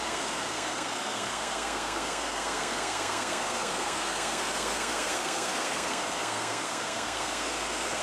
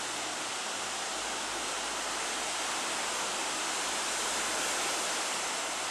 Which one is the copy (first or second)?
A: first